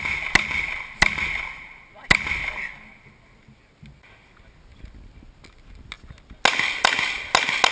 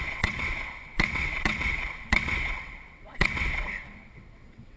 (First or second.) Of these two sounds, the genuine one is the first